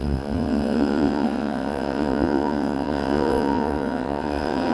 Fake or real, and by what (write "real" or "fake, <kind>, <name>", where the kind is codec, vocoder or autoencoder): fake, vocoder, WaveNeXt